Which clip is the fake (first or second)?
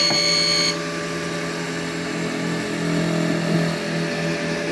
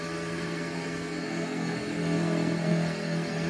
second